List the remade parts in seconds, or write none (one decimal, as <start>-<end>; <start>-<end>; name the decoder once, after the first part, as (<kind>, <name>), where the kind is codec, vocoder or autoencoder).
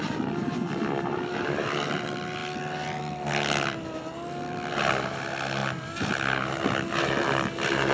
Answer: none